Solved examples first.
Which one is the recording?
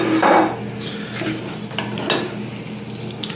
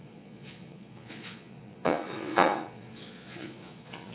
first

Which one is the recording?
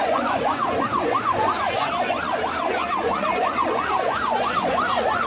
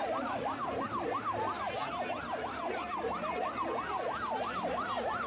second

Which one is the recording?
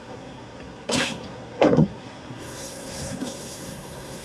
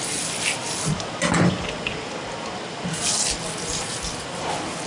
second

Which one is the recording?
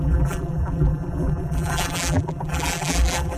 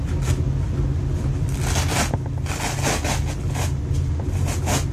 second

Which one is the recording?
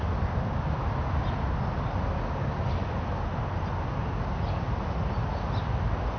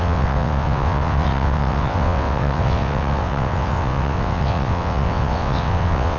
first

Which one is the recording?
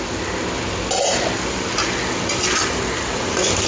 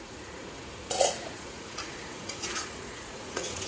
first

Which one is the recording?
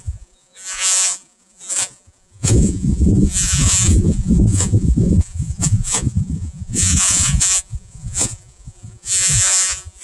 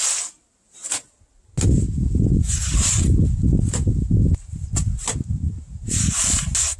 second